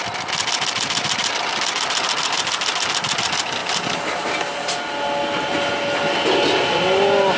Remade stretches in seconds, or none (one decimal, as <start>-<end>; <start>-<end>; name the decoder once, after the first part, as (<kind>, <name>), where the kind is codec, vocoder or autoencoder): 3.6-4.4 (vocoder, BigVGAN v2)